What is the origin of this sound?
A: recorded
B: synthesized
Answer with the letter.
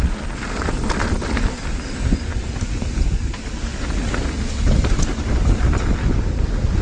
A